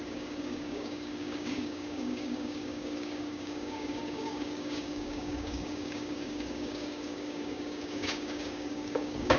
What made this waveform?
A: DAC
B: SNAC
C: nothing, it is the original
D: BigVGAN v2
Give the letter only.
A